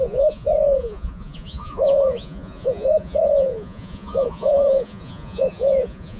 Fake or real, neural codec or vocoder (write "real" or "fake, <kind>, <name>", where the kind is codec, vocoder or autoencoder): fake, vocoder, Vocos